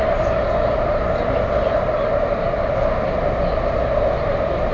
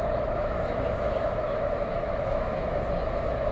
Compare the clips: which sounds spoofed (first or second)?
second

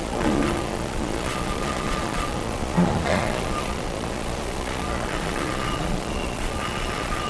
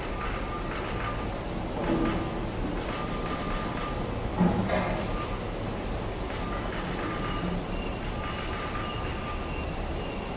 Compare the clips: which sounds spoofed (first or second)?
first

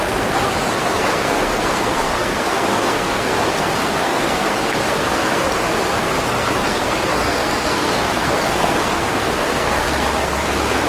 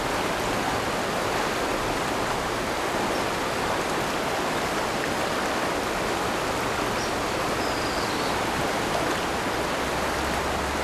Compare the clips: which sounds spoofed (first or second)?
first